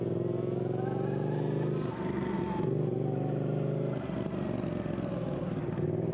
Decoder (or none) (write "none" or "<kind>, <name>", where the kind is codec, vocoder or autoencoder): none